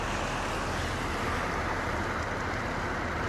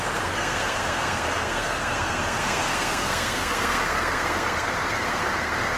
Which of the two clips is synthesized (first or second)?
second